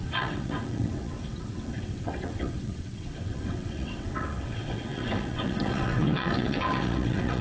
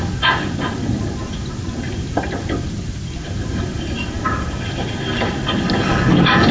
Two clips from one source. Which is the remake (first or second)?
first